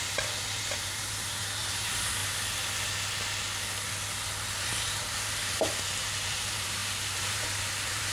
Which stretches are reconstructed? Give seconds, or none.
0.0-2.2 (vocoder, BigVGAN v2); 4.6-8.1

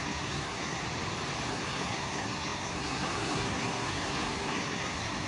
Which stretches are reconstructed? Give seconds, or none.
0.0-0.8 (codec, SNAC); 1.5-5.3

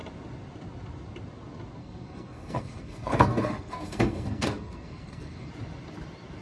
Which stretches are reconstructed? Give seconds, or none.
1.8-5.5 (codec, SNAC)

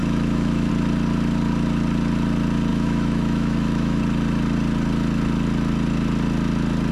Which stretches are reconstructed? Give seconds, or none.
0.0-0.7 (autoencoder, DAC-VAE); 2.7-4.0

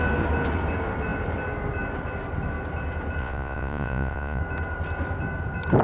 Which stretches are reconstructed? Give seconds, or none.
3.2-4.4 (vocoder, Vocos)